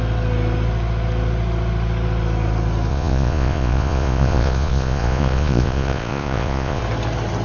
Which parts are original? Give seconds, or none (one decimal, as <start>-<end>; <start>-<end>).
0.0-2.9; 6.8-7.4